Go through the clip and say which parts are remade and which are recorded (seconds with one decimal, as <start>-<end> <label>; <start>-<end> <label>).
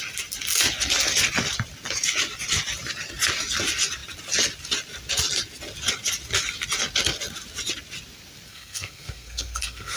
0.0-8.5 recorded; 8.5-10.0 remade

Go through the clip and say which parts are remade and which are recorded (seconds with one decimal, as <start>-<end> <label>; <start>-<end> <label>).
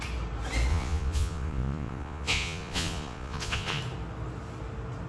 0.0-0.7 recorded; 0.7-3.8 remade; 3.8-5.1 recorded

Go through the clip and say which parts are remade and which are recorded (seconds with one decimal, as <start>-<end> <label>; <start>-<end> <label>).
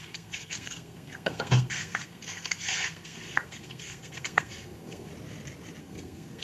0.0-5.1 remade; 5.1-5.8 recorded; 5.8-6.4 remade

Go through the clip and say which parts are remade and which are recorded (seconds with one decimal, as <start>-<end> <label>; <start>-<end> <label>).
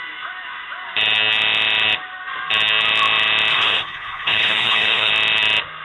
0.0-3.5 recorded; 3.5-5.1 remade; 5.1-5.8 recorded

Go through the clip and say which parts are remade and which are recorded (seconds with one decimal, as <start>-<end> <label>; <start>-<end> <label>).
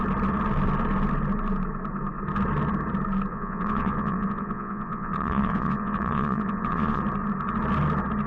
0.0-3.3 recorded; 3.3-7.0 remade; 7.0-8.3 recorded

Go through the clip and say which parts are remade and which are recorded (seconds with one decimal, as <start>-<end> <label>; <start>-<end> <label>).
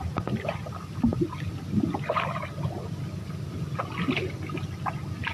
0.0-5.3 recorded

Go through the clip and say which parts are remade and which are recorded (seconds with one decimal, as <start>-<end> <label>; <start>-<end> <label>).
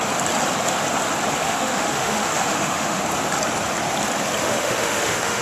0.0-1.4 recorded; 1.4-3.0 remade; 3.0-4.4 recorded; 4.4-5.4 remade